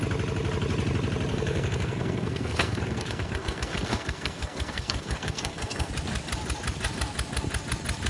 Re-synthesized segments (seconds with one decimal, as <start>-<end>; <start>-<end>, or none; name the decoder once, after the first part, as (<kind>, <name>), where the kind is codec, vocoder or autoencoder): 1.3-5.9 (codec, SNAC)